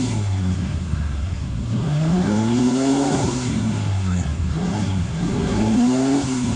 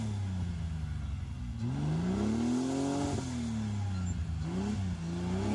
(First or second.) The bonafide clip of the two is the second